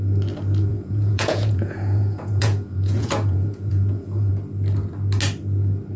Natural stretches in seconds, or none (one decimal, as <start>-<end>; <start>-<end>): 0.0-0.7; 4.3-6.0